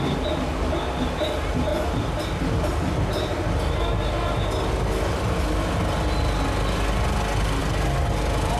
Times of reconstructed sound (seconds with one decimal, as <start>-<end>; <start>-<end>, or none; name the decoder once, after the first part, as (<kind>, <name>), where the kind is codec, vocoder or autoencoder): none